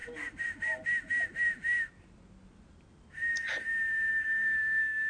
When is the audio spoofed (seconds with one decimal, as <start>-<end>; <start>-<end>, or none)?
4.1-5.1